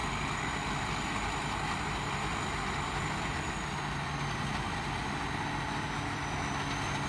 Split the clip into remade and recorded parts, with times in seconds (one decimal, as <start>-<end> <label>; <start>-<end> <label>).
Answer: 0.0-7.1 recorded